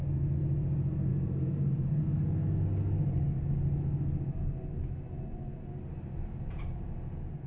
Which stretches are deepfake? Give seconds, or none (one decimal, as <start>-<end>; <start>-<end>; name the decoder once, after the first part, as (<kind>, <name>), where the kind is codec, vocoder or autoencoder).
1.1-2.0 (vocoder, BigVGAN v2)